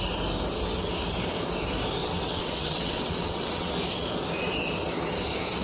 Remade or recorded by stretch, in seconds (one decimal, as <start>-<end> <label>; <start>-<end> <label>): 0.0-2.0 recorded; 2.0-3.7 remade; 3.7-5.6 recorded